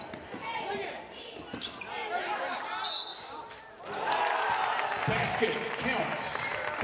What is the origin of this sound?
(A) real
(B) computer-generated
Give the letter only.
A